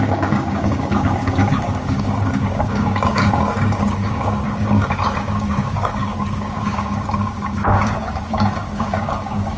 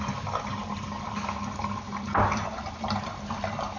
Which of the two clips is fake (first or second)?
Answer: first